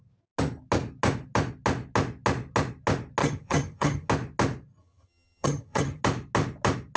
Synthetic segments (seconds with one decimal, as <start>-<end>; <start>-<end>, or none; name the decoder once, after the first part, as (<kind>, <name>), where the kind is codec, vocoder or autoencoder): 3.2-4.1 (vocoder, HiFi-GAN); 4.8-6.0